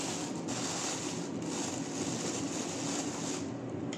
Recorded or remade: recorded